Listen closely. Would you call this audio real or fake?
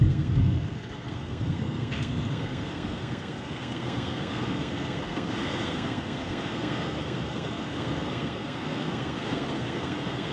fake